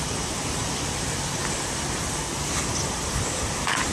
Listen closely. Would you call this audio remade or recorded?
recorded